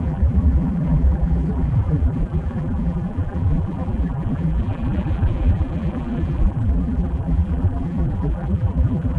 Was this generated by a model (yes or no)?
yes